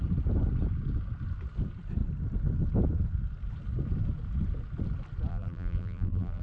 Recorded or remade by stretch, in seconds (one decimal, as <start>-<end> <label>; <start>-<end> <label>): 0.0-5.3 recorded; 5.3-6.4 remade